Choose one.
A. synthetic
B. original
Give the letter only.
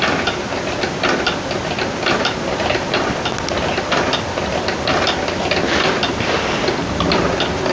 B